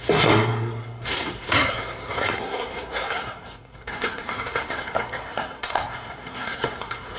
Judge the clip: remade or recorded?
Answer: remade